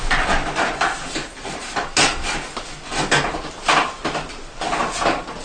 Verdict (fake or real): real